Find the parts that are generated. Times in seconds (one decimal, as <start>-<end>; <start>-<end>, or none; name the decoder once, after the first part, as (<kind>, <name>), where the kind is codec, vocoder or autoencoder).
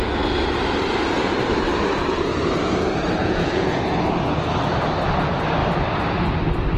3.2-3.8 (vocoder, Vocos)